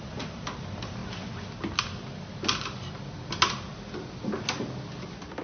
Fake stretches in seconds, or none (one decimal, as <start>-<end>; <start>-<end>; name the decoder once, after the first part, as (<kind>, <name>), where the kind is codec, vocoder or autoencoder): none